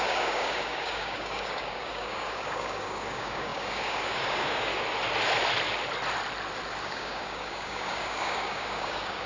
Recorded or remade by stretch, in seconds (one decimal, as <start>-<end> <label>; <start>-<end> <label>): 0.0-4.7 remade; 4.7-6.8 recorded; 6.8-9.3 remade